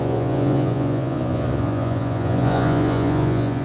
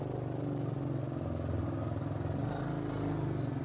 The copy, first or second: first